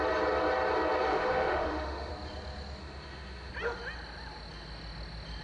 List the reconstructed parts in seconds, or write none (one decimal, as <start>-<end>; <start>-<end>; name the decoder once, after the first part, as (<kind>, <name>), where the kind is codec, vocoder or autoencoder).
1.1-2.1 (autoencoder, DAC-VAE); 2.8-3.5